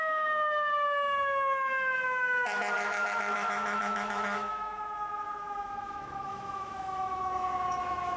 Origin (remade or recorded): remade